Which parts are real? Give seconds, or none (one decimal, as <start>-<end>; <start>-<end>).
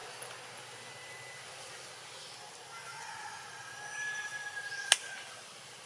0.0-2.9; 3.4-5.9